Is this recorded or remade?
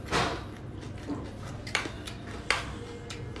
recorded